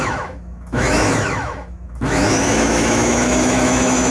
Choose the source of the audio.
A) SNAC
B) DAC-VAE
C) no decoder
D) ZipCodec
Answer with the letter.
B